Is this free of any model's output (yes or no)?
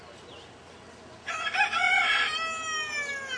yes